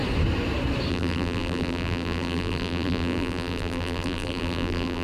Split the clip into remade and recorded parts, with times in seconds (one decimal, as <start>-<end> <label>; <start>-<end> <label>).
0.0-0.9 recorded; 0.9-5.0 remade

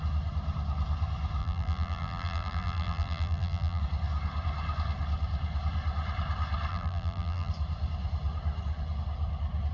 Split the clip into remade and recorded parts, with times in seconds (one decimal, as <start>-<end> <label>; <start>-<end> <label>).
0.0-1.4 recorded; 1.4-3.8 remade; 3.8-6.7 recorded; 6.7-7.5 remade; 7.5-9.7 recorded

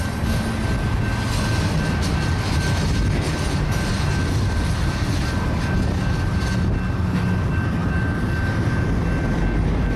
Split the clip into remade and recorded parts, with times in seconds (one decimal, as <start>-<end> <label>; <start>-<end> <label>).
0.0-10.0 recorded

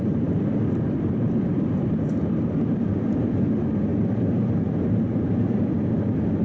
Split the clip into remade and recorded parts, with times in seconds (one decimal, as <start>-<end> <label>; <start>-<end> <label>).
0.0-6.4 remade

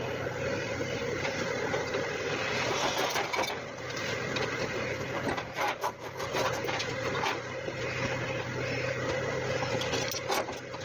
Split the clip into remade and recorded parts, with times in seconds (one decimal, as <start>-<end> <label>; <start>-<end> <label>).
0.0-0.8 recorded; 0.8-4.8 remade; 4.8-6.0 recorded; 6.0-6.9 remade; 6.9-10.8 recorded

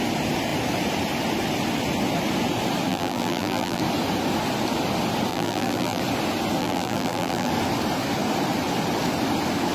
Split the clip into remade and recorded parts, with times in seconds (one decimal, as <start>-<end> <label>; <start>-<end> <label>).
0.0-2.9 recorded; 2.9-3.8 remade; 3.8-5.3 recorded; 5.3-6.0 remade; 6.0-6.6 recorded; 6.6-7.5 remade; 7.5-9.7 recorded

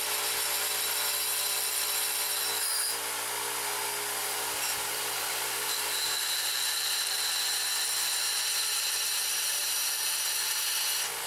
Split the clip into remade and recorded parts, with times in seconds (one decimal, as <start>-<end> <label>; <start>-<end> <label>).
0.0-1.3 recorded; 1.3-1.9 remade; 1.9-4.2 recorded; 4.2-7.2 remade; 7.2-9.6 recorded; 9.6-10.6 remade; 10.6-11.3 recorded